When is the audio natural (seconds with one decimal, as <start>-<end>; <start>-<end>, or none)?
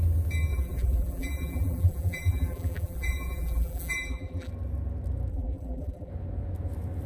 0.0-0.5; 4.5-5.3; 6.1-7.1